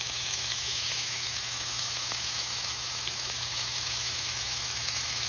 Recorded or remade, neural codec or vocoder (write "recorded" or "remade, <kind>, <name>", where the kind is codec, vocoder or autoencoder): remade, autoencoder, DAC-VAE